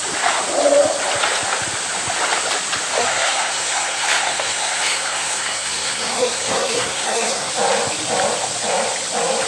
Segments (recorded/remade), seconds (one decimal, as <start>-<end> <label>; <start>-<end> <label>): 0.0-3.0 recorded; 3.0-7.5 remade; 7.5-9.5 recorded